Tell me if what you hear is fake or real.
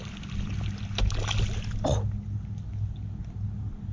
real